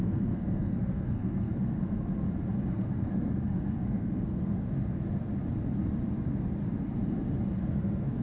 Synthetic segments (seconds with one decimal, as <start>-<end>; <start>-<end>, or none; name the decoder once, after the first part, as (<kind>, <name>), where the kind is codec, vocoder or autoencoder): 0.0-1.8 (codec, SNAC); 2.7-4.5; 7.6-8.2